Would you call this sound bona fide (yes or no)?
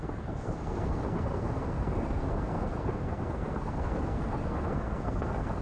no